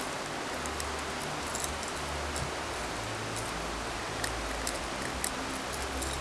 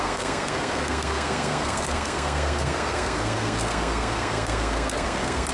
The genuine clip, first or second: first